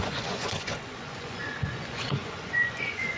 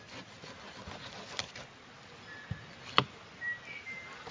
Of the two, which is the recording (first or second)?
second